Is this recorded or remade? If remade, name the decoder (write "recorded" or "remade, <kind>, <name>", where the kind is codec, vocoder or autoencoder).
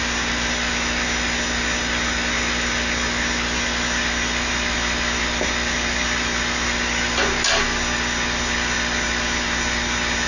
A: recorded